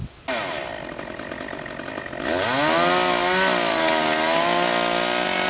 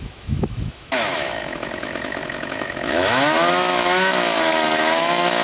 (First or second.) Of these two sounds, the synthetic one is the second